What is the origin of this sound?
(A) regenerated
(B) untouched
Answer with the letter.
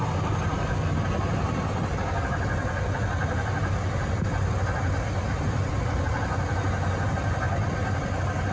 B